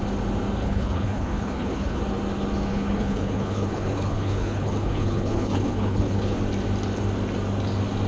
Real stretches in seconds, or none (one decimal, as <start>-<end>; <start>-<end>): 0.0-0.6; 2.0-2.7; 6.4-8.1